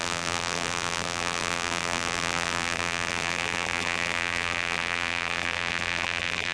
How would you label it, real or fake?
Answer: fake